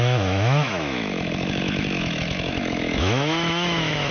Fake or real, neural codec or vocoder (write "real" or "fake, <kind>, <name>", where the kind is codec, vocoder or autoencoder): fake, autoencoder, DAC-VAE